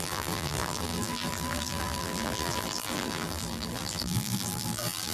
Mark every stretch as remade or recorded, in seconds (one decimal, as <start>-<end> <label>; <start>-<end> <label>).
0.0-5.1 remade